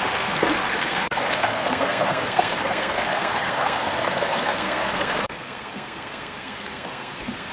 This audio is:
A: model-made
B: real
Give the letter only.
A